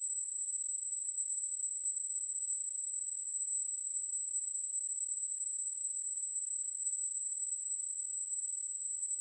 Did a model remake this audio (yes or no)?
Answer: yes